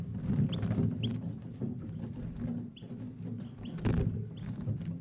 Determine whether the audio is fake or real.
real